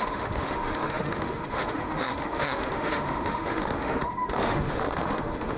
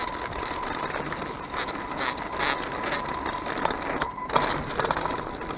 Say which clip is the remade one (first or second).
first